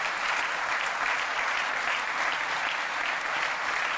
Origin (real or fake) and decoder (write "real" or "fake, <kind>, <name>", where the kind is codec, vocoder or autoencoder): real